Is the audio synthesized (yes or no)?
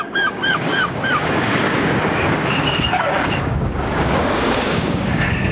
yes